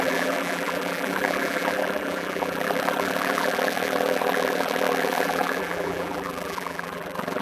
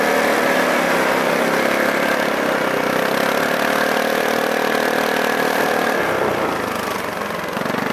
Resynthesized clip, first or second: first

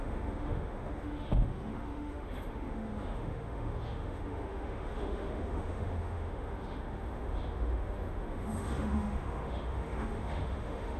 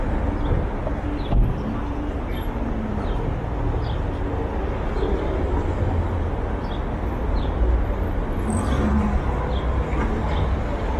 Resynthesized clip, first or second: first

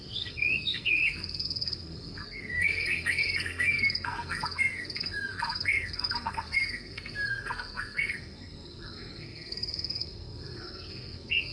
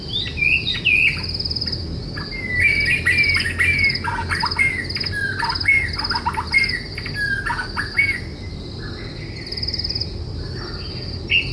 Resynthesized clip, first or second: first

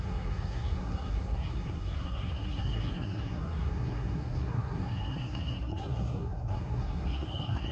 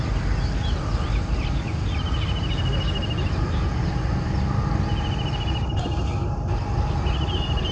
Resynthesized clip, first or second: first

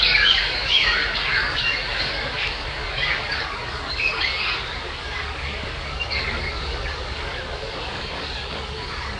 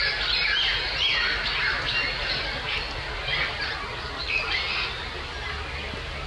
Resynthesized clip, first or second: first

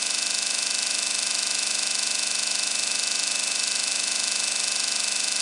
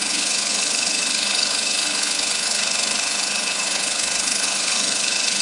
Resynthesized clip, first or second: second